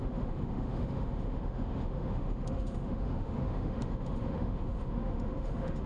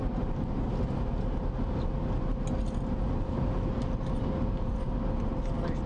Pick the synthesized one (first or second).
first